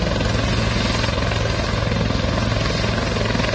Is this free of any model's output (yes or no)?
yes